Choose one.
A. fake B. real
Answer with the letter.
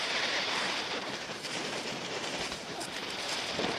A